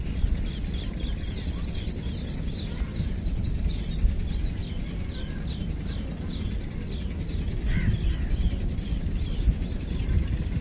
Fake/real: real